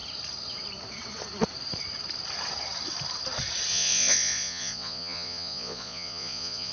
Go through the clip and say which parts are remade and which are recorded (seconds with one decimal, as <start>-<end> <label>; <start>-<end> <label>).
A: 0.0-3.7 recorded; 3.7-6.7 remade